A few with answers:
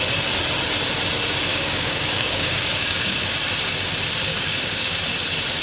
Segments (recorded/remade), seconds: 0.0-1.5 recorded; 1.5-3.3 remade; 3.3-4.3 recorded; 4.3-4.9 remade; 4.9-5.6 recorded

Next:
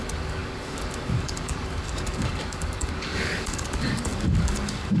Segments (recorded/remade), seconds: 0.0-5.0 remade

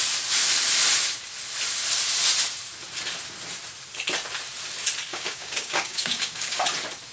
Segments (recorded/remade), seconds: 0.0-5.1 recorded; 5.1-6.6 remade; 6.6-7.1 recorded

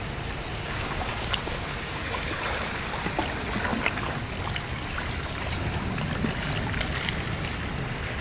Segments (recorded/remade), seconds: 0.0-0.5 recorded; 0.5-2.3 remade; 2.3-8.2 recorded

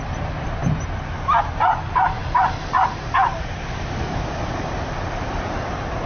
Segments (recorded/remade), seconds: 0.0-6.1 recorded

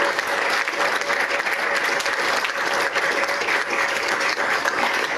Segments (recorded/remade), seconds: 0.0-0.6 remade; 0.6-3.7 recorded; 3.7-5.2 remade

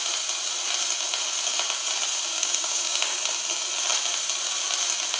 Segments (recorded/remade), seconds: 0.0-2.3 recorded; 2.3-3.1 remade; 3.1-5.2 recorded